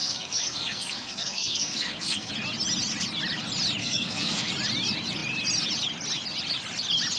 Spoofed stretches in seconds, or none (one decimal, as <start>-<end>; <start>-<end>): 0.0-2.3; 3.8-4.5